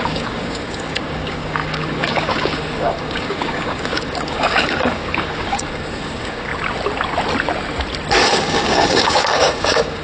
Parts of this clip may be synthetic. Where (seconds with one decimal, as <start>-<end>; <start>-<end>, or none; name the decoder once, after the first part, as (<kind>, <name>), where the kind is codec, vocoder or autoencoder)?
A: 0.0-6.5 (codec, DAC); 8.2-10.0